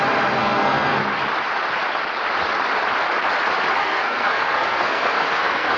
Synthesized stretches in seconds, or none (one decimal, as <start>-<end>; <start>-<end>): 0.4-1.0; 3.8-5.8